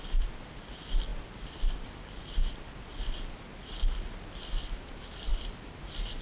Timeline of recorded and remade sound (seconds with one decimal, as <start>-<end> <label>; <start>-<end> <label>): 0.0-6.2 recorded